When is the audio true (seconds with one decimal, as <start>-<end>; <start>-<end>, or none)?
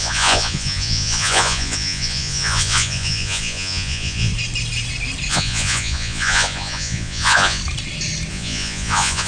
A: 4.3-5.3; 7.6-8.3